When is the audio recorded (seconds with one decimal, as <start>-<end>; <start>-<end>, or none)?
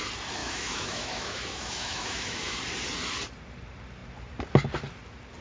0.0-0.4; 2.6-5.4